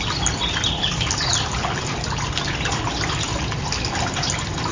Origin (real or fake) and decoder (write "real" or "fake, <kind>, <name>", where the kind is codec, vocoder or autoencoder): real